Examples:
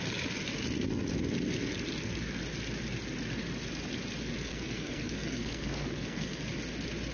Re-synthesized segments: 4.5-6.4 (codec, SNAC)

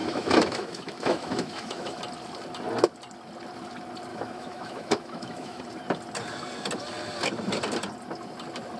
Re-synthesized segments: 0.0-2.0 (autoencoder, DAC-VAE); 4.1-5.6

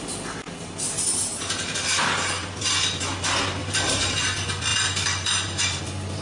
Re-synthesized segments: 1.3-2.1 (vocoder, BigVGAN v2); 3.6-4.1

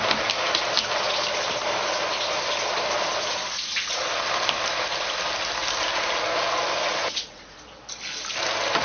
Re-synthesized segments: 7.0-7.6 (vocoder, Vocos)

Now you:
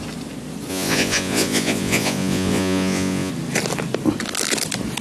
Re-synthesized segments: 0.7-3.3 (vocoder, Vocos)

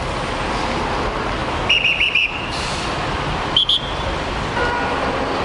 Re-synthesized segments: 1.4-4.6 (vocoder, BigVGAN v2)